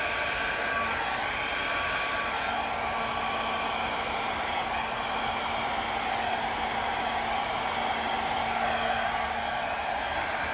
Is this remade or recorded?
recorded